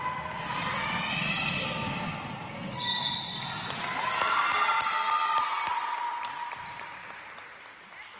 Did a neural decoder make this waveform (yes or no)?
no